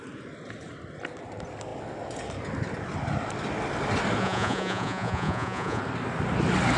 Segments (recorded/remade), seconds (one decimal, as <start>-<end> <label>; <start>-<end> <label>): 0.0-4.2 recorded; 4.2-5.8 remade; 5.8-6.8 recorded